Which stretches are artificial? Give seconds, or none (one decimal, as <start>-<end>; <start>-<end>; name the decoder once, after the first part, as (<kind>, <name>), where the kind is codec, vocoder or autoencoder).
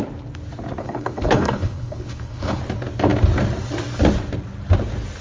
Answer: 0.8-2.6 (codec, HILCodec)